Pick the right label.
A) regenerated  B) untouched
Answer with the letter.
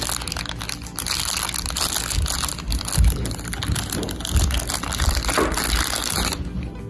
B